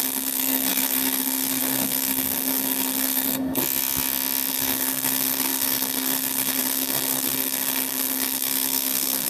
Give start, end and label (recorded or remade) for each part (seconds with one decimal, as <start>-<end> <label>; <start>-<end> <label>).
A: 0.0-3.6 remade; 3.6-4.5 recorded; 4.5-9.3 remade